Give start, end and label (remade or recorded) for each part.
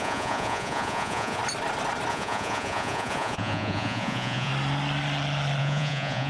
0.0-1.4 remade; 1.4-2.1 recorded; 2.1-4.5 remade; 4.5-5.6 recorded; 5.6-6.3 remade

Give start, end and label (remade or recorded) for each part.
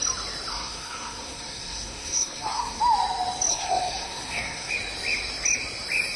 0.0-0.5 recorded; 0.5-2.8 remade; 2.8-3.5 recorded; 3.5-4.7 remade; 4.7-6.2 recorded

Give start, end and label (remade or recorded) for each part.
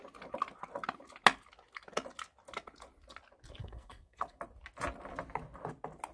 0.0-3.6 recorded; 3.6-4.4 remade; 4.4-6.1 recorded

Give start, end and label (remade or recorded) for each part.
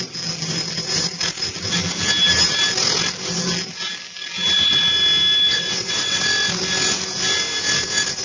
0.0-5.5 recorded; 5.5-6.2 remade; 6.2-8.2 recorded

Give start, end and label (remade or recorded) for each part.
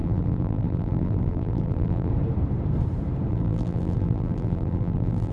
0.0-2.1 remade; 2.1-3.3 recorded; 3.3-5.3 remade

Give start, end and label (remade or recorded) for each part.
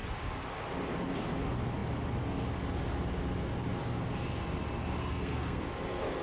0.0-5.0 recorded; 5.0-5.6 remade; 5.6-6.2 recorded